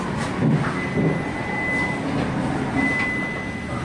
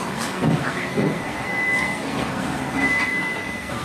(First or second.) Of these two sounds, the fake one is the second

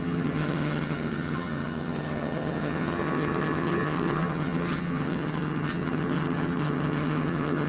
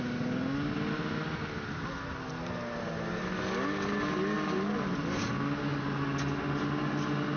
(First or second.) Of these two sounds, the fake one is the first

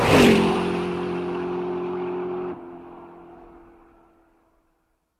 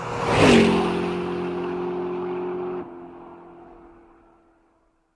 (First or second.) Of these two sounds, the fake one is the first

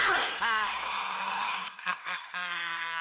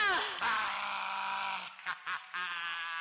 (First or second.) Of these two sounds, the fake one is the first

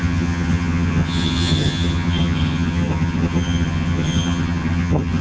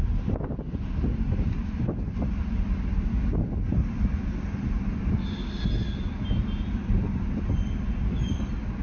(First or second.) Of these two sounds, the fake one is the first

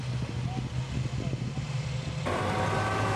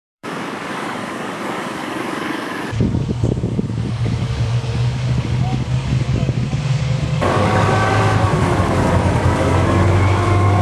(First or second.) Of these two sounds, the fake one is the second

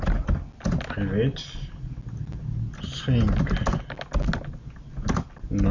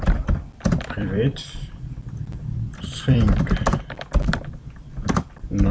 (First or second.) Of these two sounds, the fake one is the second